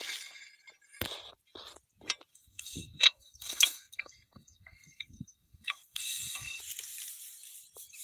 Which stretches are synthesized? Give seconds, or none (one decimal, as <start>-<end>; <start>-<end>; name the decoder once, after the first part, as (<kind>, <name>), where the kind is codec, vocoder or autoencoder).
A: 2.3-6.6 (codec, SNAC)

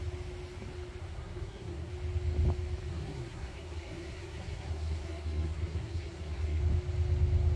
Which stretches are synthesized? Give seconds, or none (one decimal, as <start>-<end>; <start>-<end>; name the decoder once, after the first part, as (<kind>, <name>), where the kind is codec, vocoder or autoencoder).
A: 1.0-1.9 (codec, SNAC); 2.9-6.6

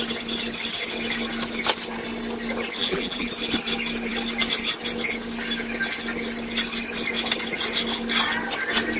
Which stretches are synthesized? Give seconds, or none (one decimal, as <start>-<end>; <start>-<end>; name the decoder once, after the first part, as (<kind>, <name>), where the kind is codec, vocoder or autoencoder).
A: 2.8-3.3 (vocoder, BigVGAN v2)

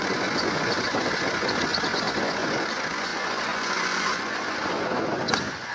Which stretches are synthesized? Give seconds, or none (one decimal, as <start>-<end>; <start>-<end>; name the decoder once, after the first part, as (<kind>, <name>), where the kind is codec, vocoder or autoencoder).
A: 0.0-5.7 (vocoder, Vocos)